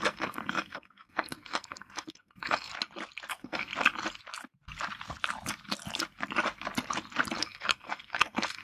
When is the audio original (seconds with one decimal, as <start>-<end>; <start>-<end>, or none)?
2.7-3.3; 3.7-7.4